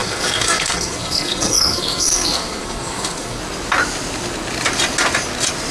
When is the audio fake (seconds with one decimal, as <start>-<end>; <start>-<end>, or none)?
0.0-3.4